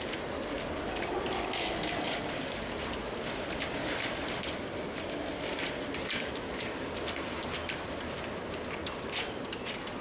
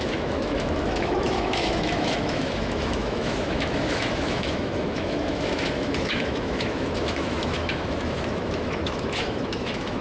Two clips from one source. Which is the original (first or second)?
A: first